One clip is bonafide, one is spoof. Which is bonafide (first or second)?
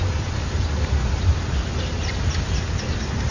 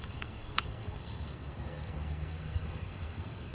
first